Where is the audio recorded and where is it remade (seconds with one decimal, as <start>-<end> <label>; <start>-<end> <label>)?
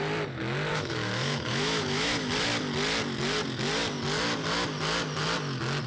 0.0-0.7 recorded; 0.7-2.3 remade; 2.3-5.9 recorded